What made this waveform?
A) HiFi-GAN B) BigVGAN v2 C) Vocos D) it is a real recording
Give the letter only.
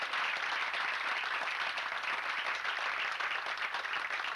B